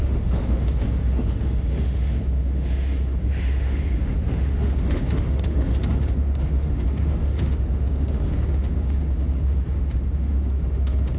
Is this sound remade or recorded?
remade